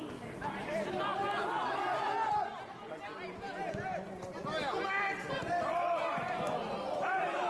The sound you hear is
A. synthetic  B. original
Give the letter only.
B